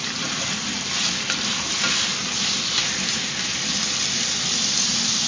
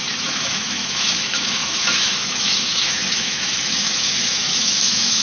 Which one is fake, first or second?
second